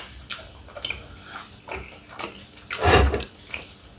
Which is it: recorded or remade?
recorded